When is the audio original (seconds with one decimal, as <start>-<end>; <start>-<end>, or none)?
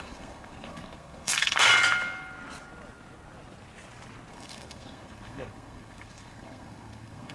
1.7-4.3